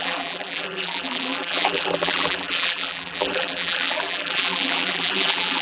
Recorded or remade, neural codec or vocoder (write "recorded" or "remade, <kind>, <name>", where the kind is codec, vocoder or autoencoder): remade, vocoder, BigVGAN v2